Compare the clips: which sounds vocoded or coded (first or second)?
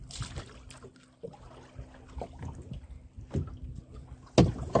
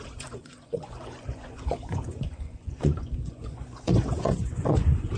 second